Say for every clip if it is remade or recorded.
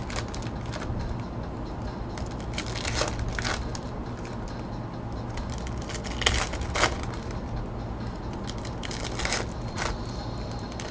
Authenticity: recorded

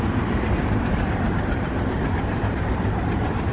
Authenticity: remade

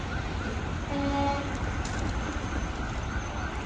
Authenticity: recorded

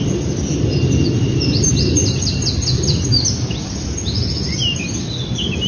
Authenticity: recorded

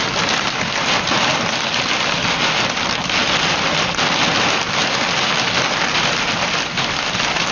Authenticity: recorded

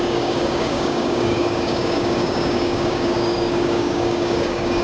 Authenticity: remade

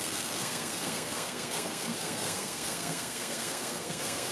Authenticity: remade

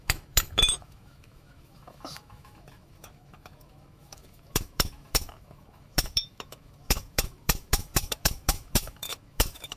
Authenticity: remade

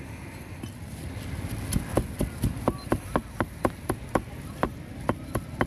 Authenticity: recorded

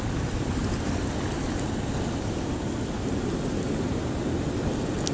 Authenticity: recorded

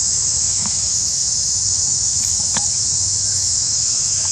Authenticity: remade